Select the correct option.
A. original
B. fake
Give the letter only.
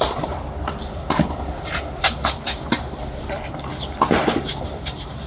B